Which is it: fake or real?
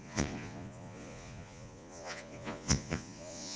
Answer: fake